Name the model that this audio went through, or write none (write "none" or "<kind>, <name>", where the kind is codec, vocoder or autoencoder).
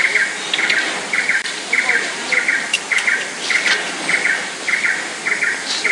none